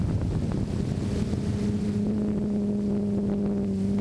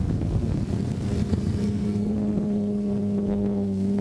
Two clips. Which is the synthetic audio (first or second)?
second